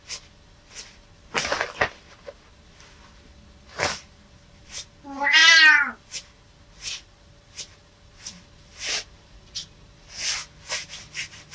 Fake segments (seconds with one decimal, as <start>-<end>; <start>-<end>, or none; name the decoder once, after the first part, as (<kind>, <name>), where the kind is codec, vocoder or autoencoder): none